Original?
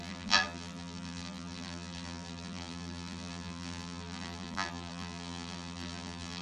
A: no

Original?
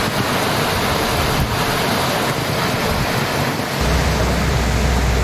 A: yes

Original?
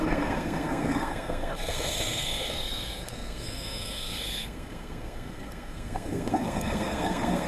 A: no